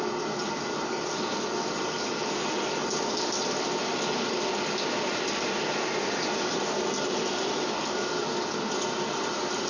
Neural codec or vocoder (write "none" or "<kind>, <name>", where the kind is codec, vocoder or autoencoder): none